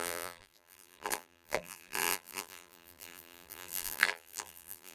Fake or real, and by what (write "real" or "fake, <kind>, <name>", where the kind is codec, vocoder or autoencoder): fake, vocoder, BigVGAN v2